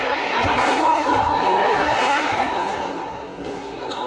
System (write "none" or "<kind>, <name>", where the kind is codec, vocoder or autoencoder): codec, SNAC